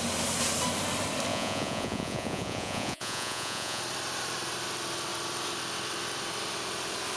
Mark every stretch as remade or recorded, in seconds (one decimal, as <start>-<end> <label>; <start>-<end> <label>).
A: 0.0-1.3 recorded; 1.3-3.8 remade; 3.8-7.2 recorded